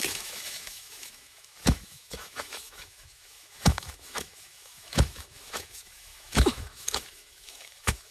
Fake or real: fake